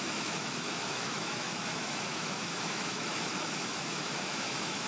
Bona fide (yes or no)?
no